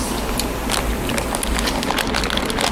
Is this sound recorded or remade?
recorded